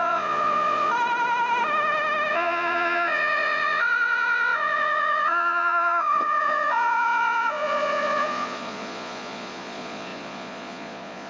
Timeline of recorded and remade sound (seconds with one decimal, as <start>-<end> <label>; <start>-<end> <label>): 0.0-0.9 remade; 0.9-2.3 recorded; 2.3-11.3 remade